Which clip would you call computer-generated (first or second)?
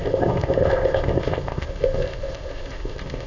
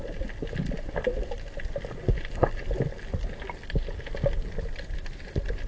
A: first